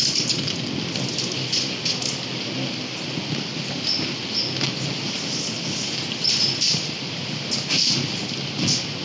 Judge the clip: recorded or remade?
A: recorded